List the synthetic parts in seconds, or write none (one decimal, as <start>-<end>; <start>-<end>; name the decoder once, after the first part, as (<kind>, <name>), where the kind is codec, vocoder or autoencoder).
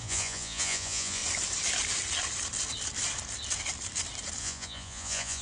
0.0-1.2 (vocoder, Vocos); 4.4-5.4